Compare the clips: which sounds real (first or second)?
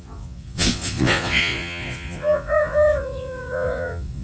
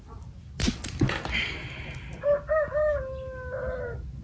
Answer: second